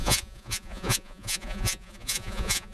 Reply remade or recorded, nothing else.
remade